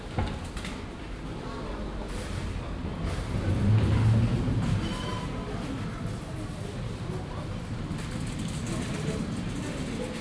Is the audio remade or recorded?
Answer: recorded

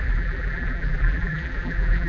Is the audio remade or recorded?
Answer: remade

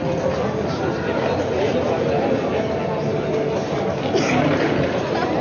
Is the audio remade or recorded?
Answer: recorded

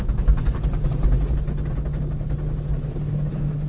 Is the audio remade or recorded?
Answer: recorded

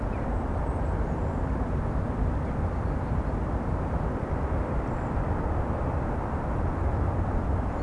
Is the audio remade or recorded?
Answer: remade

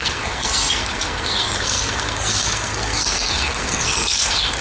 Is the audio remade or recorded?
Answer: remade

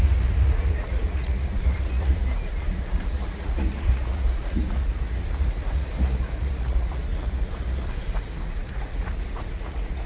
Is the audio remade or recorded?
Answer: remade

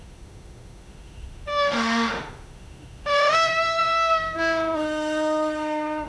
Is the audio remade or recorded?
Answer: remade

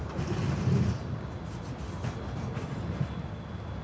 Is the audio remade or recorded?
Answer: recorded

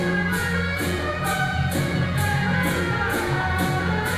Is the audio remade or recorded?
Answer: remade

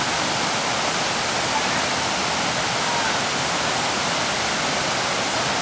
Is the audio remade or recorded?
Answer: recorded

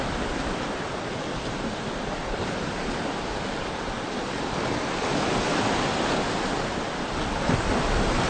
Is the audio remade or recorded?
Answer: remade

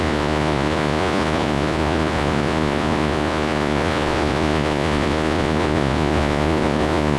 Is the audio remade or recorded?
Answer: remade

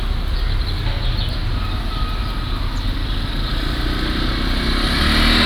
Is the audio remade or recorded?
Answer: recorded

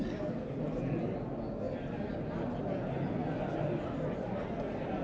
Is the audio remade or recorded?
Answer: recorded